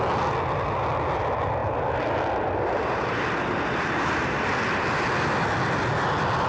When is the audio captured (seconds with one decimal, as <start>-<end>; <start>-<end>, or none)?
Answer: 0.0-6.5

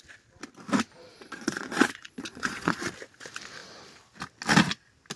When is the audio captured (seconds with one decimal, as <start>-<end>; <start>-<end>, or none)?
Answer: 0.0-1.1; 2.9-5.2

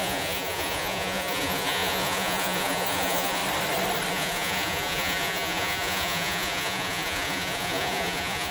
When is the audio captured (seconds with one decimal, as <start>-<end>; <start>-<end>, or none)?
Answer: 3.4-4.1

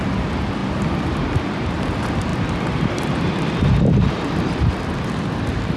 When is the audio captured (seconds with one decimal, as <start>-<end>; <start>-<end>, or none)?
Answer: 0.0-5.8